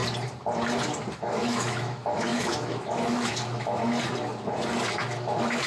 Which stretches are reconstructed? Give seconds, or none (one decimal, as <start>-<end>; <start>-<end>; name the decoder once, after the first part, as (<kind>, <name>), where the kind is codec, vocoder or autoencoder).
1.1-3.8 (autoencoder, DAC-VAE); 4.9-5.7